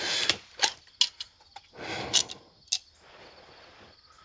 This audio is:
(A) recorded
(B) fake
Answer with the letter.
A